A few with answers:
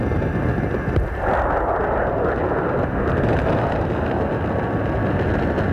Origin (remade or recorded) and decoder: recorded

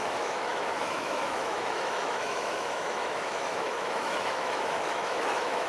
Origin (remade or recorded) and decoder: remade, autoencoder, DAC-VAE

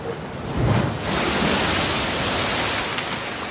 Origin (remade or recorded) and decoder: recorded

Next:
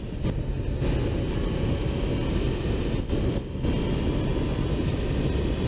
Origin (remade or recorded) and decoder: recorded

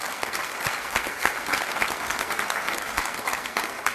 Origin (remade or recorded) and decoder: remade, codec, SNAC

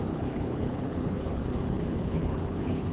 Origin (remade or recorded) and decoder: remade, codec, HILCodec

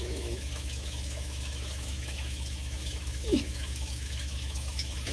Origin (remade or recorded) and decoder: remade, autoencoder, DAC-VAE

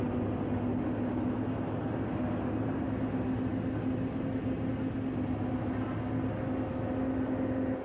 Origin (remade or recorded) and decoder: recorded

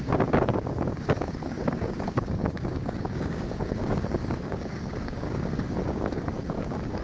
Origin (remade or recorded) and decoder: remade, codec, DAC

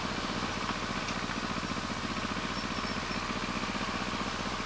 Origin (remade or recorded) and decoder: recorded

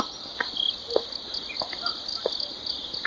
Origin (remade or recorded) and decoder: recorded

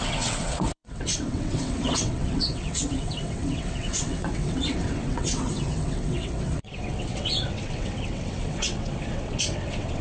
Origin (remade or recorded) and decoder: remade, vocoder, WaveNeXt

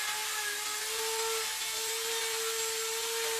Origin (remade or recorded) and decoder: recorded